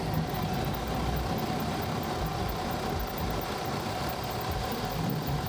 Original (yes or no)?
yes